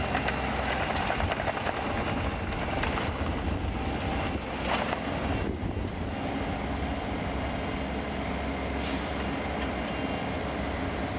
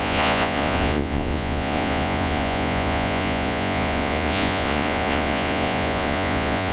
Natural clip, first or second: first